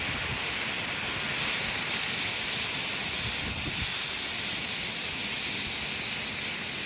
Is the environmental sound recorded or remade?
recorded